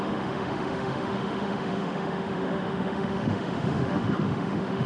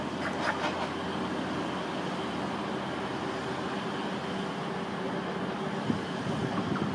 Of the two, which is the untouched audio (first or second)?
second